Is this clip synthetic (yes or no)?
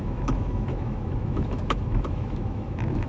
yes